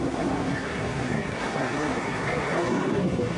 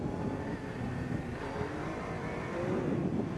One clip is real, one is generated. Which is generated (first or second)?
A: first